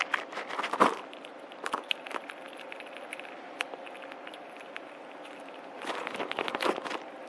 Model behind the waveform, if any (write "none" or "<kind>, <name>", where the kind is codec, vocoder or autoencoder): none